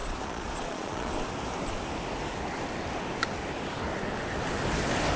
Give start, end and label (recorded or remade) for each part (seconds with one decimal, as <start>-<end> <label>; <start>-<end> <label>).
0.0-1.1 remade; 1.1-5.2 recorded

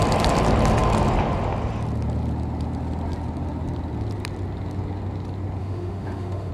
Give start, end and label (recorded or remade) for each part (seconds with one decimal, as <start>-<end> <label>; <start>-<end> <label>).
0.0-5.6 recorded; 5.6-6.5 remade

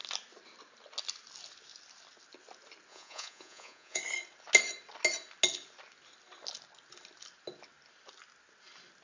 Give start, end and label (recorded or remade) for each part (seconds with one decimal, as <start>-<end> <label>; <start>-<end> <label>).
0.0-2.9 recorded; 2.9-4.0 remade; 4.0-9.0 recorded